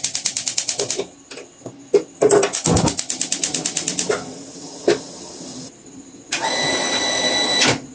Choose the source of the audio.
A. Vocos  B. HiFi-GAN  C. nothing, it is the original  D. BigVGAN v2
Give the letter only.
C